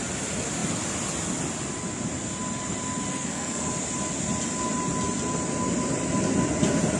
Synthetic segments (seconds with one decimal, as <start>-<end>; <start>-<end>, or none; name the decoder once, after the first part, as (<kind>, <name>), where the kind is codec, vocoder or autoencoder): 3.1-3.7 (codec, SNAC)